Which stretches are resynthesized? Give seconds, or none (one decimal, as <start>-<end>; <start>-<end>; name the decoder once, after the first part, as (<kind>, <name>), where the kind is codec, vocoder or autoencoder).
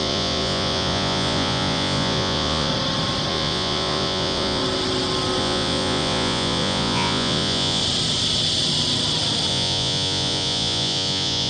0.0-2.7 (vocoder, Vocos); 3.3-4.6; 5.4-7.8; 9.5-11.5